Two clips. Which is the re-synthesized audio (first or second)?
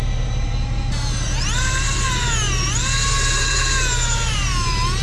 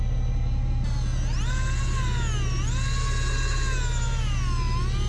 first